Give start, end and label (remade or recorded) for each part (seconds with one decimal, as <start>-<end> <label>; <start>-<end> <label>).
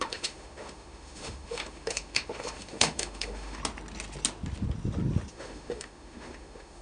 0.0-3.6 remade; 3.6-5.3 recorded; 5.3-6.8 remade